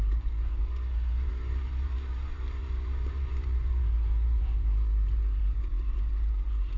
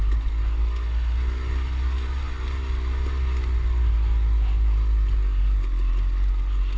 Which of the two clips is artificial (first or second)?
first